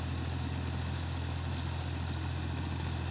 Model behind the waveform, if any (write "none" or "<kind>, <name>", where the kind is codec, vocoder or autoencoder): none